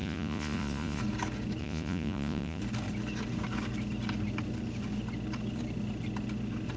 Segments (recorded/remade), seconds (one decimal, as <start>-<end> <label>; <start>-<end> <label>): 0.0-1.0 remade; 1.0-1.6 recorded; 1.6-2.6 remade; 2.6-6.8 recorded